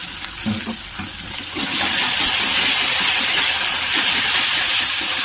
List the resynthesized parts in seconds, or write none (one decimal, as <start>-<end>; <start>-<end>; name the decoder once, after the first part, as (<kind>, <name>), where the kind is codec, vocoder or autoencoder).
none

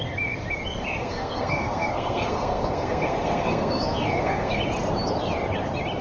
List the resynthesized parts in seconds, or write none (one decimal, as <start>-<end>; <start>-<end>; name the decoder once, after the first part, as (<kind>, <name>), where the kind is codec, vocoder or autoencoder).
1.0-4.6 (codec, SNAC)

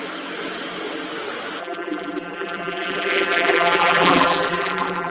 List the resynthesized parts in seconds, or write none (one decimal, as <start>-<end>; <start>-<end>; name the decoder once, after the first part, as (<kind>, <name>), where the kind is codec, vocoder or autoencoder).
1.6-5.1 (vocoder, BigVGAN v2)

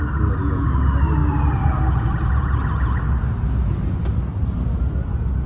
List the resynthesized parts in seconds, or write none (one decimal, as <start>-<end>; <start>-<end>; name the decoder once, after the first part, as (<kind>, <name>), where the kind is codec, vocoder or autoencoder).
none

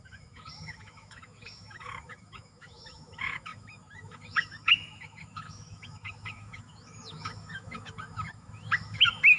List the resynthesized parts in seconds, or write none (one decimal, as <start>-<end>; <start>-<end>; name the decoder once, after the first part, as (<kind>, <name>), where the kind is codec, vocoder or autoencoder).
0.0-9.4 (autoencoder, DAC-VAE)

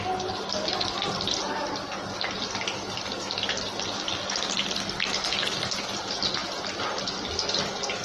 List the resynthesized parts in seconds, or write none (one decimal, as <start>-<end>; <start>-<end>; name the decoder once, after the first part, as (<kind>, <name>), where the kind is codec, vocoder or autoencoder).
none

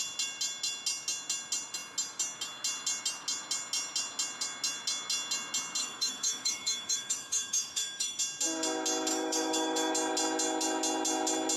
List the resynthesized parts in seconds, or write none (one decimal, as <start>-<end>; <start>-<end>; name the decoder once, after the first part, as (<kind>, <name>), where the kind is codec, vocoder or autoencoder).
5.8-8.2 (autoencoder, DAC-VAE); 9.1-9.9